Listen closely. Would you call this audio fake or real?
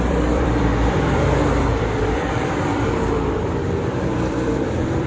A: fake